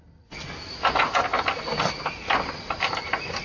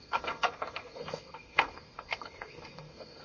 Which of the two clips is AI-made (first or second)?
second